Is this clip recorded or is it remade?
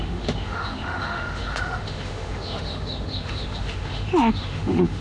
remade